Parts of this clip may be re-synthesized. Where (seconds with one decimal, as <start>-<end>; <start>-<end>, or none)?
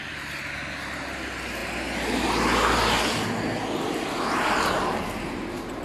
none